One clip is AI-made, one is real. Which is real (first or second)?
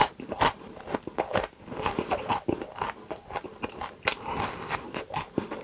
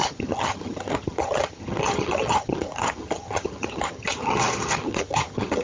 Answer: first